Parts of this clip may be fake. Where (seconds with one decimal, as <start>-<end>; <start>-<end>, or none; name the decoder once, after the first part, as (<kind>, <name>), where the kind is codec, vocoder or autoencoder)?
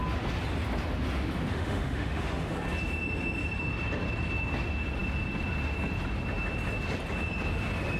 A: 1.5-2.5 (autoencoder, DAC-VAE)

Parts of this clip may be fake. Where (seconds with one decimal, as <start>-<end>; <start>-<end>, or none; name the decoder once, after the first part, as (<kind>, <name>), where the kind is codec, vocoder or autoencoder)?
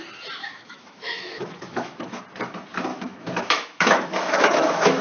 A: 0.4-2.2 (autoencoder, DAC-VAE); 2.9-5.0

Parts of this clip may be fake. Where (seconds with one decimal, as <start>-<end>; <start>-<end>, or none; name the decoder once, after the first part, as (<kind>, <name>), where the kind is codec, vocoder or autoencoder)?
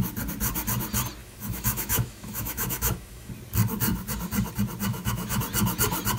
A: 1.2-3.3 (autoencoder, DAC-VAE); 4.9-5.4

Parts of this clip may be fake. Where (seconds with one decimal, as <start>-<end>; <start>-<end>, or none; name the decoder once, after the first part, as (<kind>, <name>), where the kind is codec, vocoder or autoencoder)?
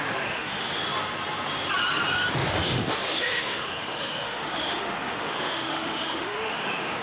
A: 0.0-0.8 (autoencoder, DAC-VAE); 2.5-7.0